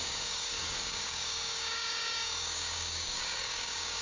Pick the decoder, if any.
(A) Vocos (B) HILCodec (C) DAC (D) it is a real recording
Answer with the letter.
C